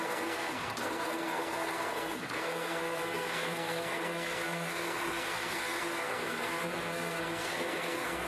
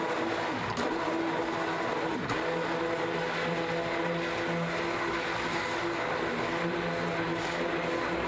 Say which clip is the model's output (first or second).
first